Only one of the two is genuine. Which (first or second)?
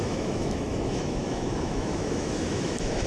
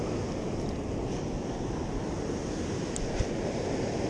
second